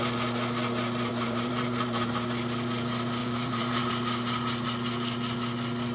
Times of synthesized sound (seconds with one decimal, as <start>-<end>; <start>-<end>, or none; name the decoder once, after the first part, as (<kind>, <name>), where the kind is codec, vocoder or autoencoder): 1.1-2.1 (vocoder, BigVGAN v2); 3.2-3.9